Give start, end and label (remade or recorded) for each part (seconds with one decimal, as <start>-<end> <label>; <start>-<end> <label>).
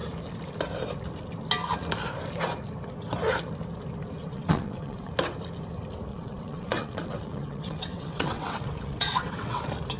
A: 0.0-4.2 recorded; 4.2-5.1 remade; 5.1-6.1 recorded; 6.1-9.6 remade; 9.6-10.0 recorded